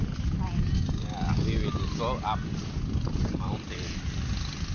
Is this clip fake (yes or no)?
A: no